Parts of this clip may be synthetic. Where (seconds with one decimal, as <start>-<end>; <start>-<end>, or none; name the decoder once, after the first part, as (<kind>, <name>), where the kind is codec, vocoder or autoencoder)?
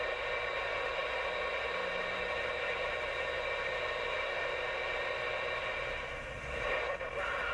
none